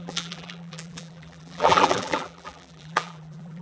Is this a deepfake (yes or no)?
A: yes